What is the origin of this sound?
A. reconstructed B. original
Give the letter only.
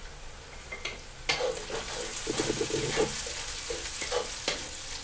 B